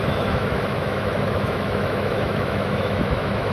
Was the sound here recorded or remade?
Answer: remade